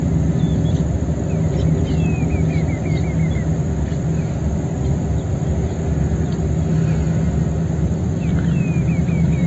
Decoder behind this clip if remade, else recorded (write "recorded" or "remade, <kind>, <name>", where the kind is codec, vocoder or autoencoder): recorded